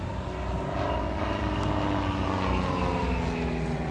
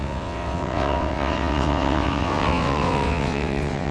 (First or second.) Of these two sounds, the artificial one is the second